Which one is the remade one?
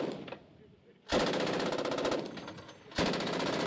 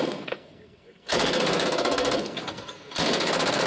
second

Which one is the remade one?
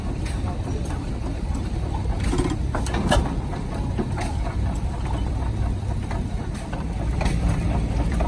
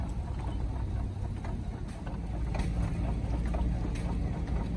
first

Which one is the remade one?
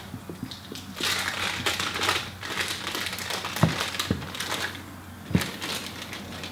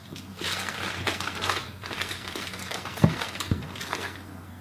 second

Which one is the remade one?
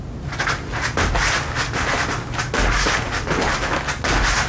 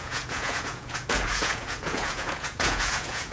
second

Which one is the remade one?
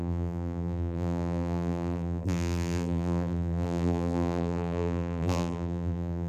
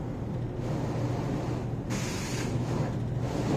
first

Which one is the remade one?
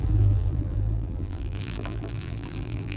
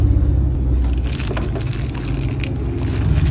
first